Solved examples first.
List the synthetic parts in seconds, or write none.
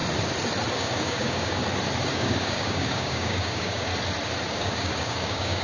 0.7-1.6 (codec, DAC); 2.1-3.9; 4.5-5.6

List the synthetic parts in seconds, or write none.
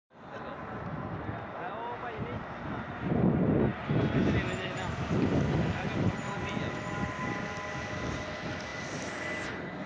none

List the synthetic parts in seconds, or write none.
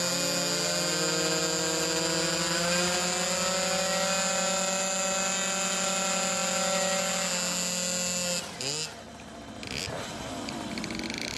none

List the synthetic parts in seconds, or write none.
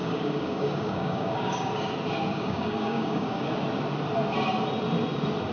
0.0-1.7 (codec, DAC); 2.3-3.5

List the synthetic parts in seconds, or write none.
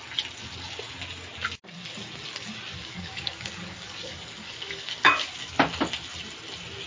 2.8-5.5 (codec, DAC)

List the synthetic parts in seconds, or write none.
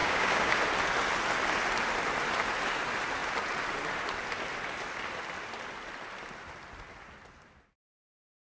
0.0-0.6 (codec, DAC)